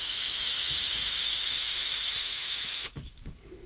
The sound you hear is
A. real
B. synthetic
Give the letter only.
B